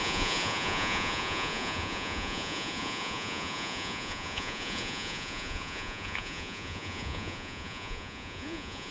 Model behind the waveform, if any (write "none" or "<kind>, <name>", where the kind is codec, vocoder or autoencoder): vocoder, Vocos